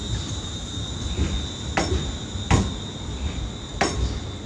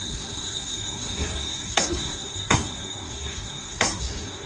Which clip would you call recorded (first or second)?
first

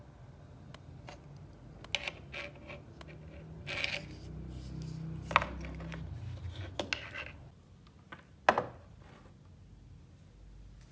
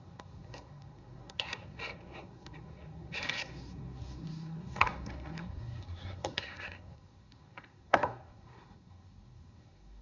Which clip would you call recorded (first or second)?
first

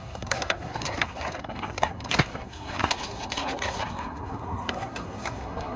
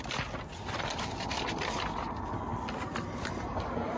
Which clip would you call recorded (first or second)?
second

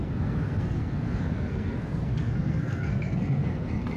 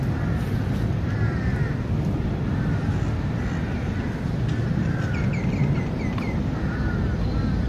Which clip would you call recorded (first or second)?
second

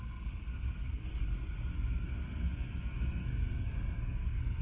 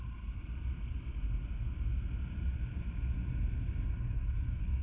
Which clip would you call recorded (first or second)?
second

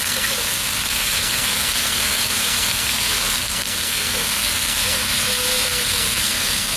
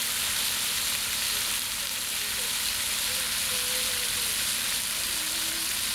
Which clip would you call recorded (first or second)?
second